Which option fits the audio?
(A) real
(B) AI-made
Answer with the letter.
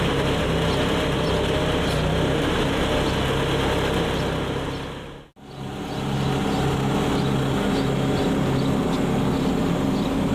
A